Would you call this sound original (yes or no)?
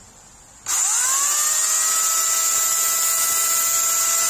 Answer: yes